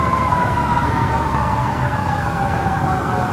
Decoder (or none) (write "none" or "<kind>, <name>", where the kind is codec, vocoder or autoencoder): codec, SNAC